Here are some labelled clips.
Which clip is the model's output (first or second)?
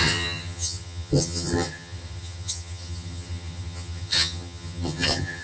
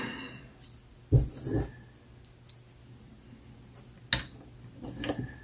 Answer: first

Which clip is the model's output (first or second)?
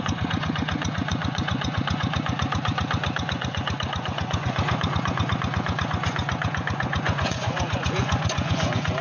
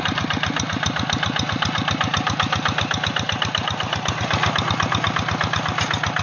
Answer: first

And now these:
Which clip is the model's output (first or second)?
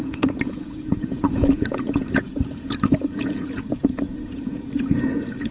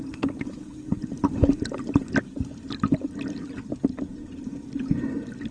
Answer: first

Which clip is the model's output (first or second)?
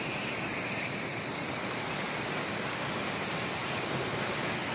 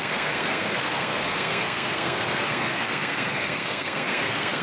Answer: second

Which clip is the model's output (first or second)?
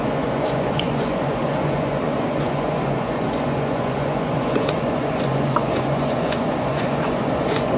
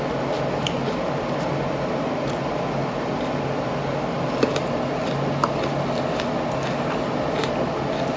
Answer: first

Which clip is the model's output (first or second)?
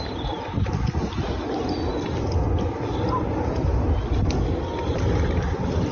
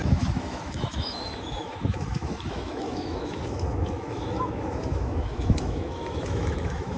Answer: second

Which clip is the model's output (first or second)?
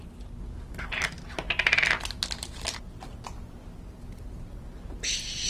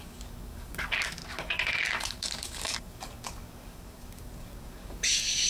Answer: second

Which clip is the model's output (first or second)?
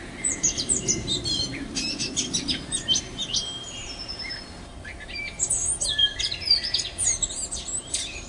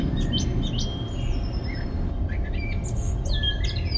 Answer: first